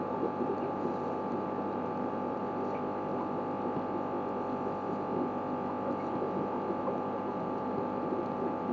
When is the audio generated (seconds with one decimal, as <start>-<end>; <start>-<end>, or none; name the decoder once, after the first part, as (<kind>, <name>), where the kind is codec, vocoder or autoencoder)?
0.0-2.4 (vocoder, BigVGAN v2); 6.8-8.7